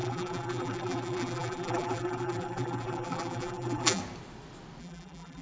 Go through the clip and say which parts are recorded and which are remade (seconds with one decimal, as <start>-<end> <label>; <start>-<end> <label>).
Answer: 0.0-4.0 remade; 4.0-4.8 recorded; 4.8-5.4 remade